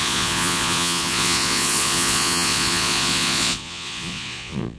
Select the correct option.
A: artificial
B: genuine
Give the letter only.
A